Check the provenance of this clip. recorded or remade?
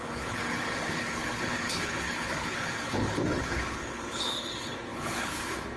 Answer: remade